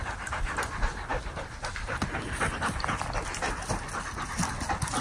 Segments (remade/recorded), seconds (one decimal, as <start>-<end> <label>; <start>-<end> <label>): 0.0-5.0 recorded